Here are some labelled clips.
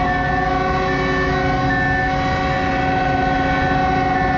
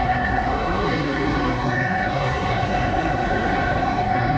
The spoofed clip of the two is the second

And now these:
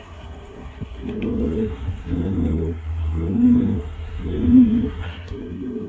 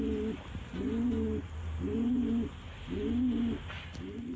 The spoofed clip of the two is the first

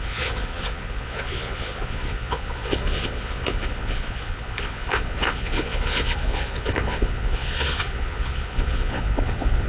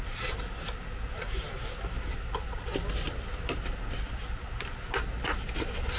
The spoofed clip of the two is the first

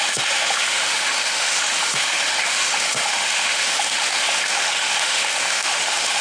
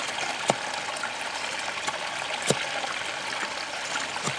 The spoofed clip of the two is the first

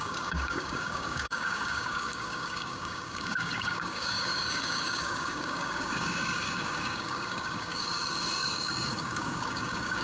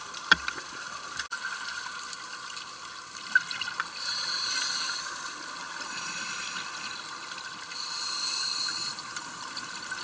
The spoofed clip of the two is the first